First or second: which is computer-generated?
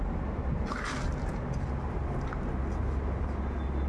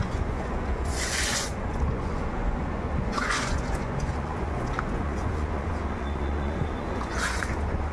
second